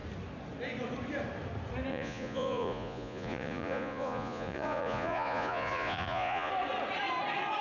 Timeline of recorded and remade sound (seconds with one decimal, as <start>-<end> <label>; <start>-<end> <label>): 0.0-1.9 recorded; 1.9-6.5 remade; 6.5-7.6 recorded